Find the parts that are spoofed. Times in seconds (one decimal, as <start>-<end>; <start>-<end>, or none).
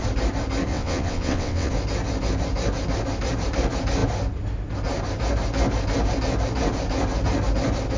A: 0.7-1.7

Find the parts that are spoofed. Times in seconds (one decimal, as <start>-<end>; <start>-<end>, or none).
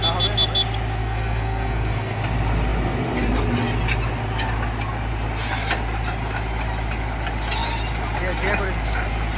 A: 1.0-2.2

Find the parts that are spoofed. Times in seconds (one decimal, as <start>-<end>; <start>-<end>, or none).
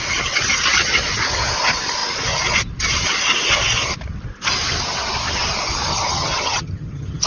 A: 5.9-7.3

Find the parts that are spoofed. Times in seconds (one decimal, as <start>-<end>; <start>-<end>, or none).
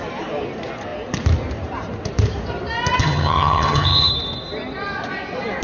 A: 3.0-4.1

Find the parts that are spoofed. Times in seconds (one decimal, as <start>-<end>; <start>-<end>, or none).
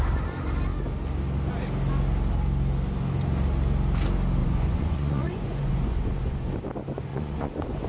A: 4.4-6.5; 7.1-7.9